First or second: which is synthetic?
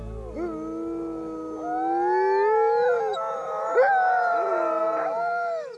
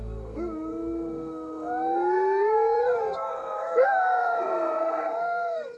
second